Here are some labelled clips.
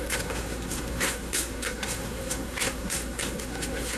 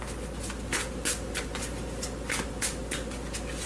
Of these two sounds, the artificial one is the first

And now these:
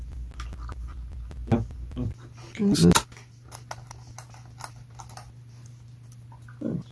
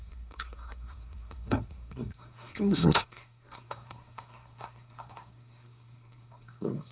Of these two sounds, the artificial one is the second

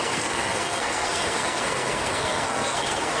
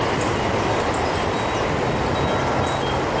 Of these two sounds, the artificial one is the first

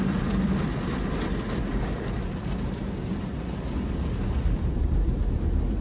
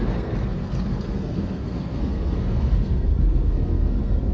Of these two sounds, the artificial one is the second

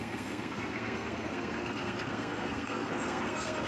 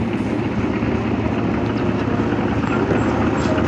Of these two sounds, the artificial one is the first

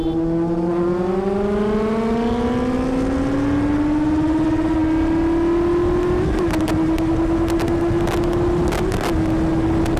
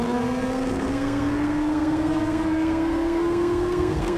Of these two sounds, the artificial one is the second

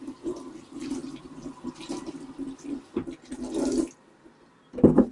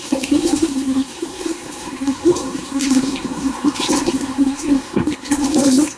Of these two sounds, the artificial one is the second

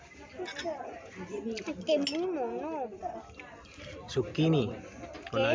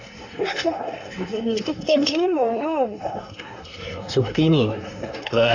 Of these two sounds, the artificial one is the second